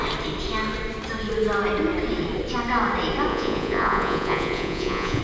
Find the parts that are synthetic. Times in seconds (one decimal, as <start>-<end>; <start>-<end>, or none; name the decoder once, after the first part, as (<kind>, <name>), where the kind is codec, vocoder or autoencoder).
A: 3.3-5.2 (vocoder, Vocos)